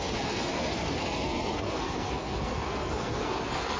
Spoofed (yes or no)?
yes